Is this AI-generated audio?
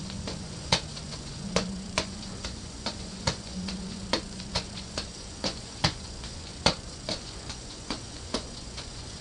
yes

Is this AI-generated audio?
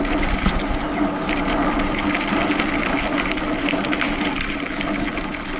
no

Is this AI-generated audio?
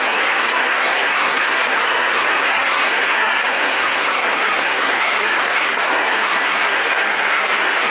yes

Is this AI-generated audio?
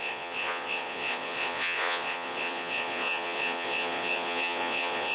yes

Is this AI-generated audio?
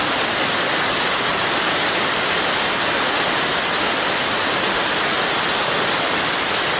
no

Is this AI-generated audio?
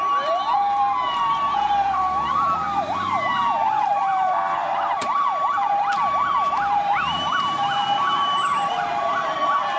yes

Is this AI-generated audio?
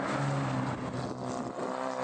no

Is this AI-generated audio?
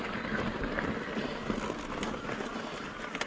no